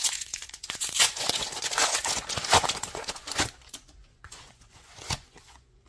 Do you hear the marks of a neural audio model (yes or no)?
yes